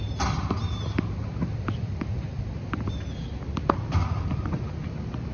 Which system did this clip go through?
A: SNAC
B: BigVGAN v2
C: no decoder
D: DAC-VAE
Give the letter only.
C